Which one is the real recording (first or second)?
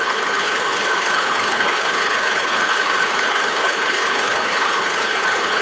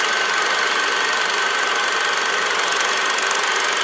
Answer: second